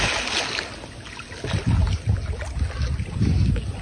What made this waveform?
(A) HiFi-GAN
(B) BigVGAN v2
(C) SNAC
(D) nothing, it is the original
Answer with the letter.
D